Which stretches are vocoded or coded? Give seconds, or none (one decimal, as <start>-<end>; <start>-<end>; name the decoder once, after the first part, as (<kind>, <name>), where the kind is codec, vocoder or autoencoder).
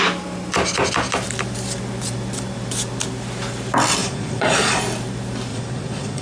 4.0-4.8 (vocoder, Vocos); 5.5-6.2